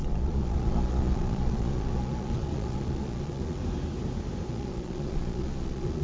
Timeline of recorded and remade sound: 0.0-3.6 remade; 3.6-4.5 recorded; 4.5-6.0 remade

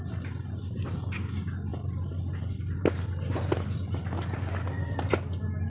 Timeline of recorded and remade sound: 0.0-5.7 recorded